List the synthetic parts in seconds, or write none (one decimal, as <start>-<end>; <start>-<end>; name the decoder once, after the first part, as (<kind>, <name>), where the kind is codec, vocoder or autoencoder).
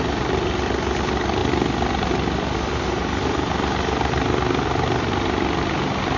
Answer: none